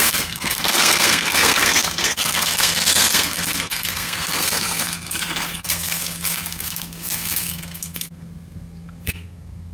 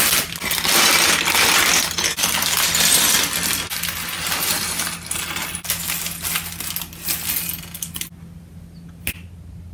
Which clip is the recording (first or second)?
second